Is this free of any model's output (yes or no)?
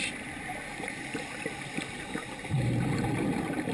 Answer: yes